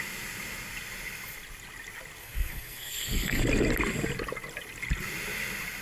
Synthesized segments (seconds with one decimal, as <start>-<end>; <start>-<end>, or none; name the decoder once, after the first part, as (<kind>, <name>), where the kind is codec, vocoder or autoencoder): 2.2-3.4 (codec, SNAC)